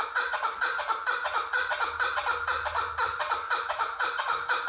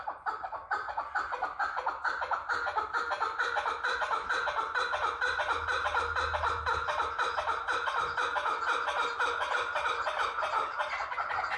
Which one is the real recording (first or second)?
second